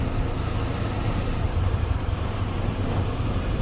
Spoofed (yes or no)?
yes